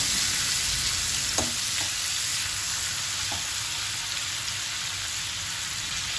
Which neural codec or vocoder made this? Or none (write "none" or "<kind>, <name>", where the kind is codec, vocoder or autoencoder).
none